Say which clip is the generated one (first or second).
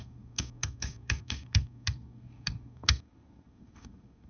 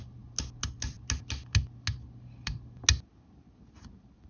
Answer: first